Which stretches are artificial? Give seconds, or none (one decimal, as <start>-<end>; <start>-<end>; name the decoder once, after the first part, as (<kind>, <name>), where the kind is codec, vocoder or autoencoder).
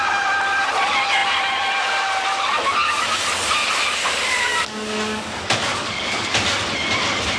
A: 4.5-6.6 (codec, DAC)